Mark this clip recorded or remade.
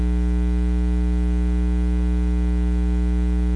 recorded